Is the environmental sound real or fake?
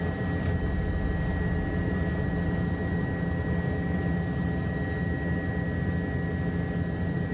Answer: real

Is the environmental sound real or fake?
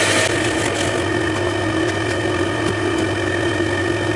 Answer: real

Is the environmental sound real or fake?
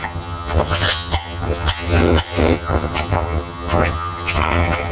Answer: fake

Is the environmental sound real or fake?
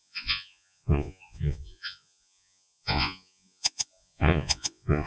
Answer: fake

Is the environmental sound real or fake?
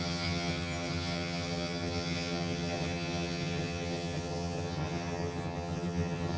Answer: fake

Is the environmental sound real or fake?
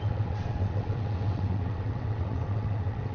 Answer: fake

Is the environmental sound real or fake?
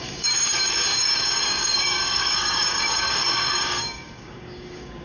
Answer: fake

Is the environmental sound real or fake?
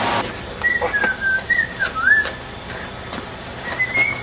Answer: real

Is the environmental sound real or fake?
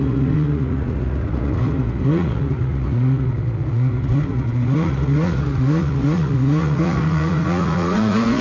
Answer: fake